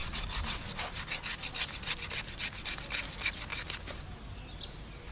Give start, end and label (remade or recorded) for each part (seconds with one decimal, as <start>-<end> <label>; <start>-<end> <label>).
0.0-5.1 recorded